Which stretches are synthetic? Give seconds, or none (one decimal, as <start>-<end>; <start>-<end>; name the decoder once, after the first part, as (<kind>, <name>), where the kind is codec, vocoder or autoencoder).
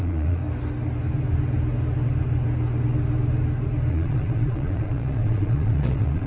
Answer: 0.0-0.4 (vocoder, Vocos); 3.9-6.3